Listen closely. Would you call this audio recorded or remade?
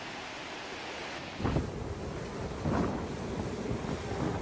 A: recorded